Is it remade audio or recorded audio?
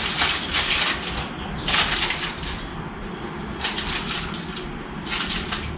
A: recorded